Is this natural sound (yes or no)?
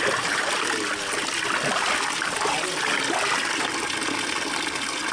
yes